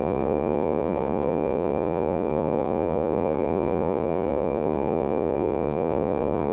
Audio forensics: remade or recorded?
remade